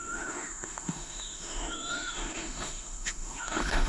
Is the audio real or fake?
fake